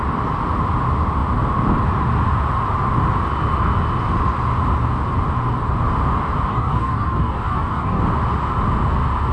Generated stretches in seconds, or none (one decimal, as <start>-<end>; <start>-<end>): 6.5-8.0

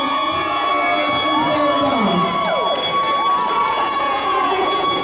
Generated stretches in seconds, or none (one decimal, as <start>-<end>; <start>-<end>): 0.0-0.7; 3.7-5.0